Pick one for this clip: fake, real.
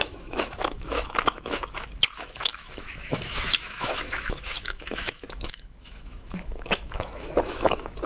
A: fake